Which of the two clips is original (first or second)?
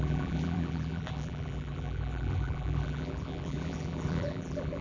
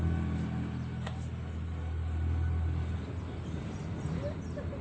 second